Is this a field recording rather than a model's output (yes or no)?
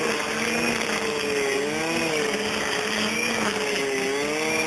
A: yes